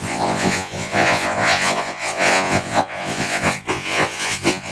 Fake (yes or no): yes